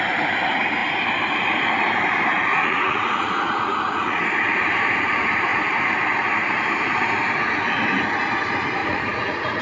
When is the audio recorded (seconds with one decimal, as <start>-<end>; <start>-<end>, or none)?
0.0-2.3; 4.2-8.8